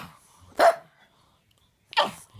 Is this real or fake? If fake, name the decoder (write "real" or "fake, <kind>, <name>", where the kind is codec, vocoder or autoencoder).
real